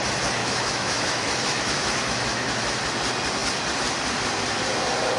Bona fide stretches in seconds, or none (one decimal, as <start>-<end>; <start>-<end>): 0.0-0.4; 2.8-5.2

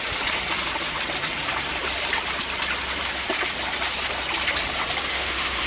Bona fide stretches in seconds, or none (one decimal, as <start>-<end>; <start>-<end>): 0.0-5.1

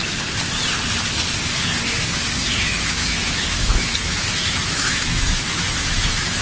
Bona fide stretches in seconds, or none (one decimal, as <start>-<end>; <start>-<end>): 0.0-2.4

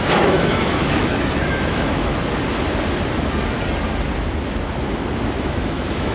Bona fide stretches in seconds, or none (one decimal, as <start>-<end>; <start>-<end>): 2.1-5.4

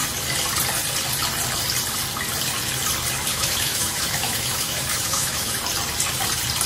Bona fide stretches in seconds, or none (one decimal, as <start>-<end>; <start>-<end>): 0.0-3.3; 5.6-6.7

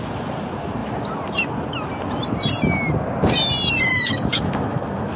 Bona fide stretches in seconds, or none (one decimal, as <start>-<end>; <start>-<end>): 0.0-3.9

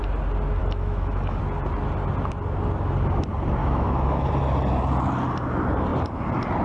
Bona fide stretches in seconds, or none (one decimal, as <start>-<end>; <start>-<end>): 0.0-0.6; 1.4-3.6; 4.3-6.6